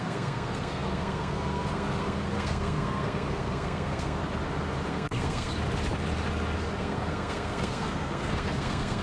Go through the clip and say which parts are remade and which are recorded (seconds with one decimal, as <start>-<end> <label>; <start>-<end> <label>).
0.0-4.2 remade; 4.2-4.9 recorded; 4.9-5.5 remade; 5.5-6.8 recorded; 6.8-9.0 remade